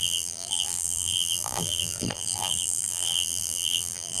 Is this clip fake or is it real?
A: fake